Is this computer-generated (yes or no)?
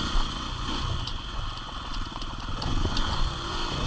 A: yes